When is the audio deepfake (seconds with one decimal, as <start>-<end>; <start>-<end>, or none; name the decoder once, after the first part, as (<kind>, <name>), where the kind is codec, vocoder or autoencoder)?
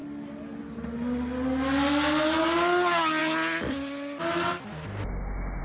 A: none